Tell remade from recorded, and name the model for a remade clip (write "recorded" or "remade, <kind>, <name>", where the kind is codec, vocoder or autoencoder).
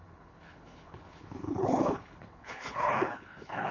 remade, codec, HILCodec